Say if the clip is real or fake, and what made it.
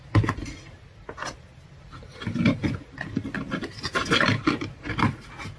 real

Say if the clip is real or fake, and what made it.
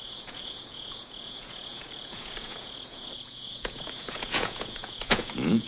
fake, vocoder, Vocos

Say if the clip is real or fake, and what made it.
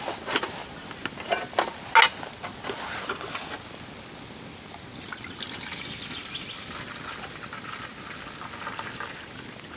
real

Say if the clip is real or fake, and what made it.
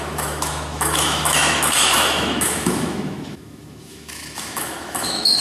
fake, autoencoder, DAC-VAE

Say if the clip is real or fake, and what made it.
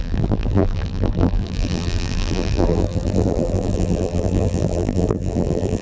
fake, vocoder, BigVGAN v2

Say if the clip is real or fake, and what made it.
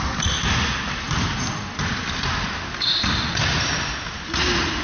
real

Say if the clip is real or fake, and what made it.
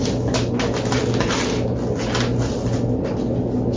real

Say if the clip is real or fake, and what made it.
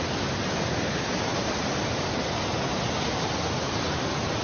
real